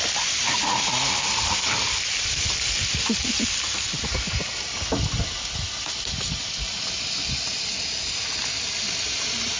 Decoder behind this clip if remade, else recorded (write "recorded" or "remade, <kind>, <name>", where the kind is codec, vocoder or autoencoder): recorded